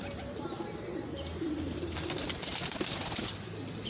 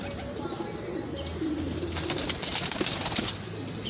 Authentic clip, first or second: second